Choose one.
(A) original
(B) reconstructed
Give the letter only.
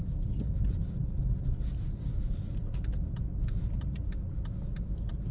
A